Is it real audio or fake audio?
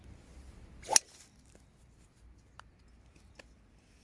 real